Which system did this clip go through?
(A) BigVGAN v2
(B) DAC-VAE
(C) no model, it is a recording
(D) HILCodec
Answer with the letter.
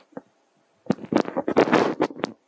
C